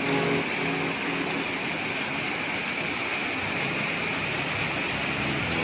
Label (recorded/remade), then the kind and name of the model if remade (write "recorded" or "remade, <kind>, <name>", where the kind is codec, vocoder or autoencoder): recorded